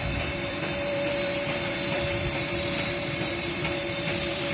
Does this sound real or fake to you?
fake